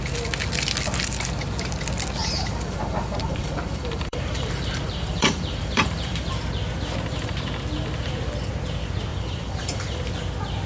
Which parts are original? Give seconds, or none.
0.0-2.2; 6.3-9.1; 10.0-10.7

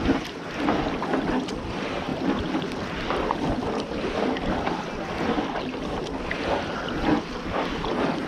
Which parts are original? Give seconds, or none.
0.0-8.3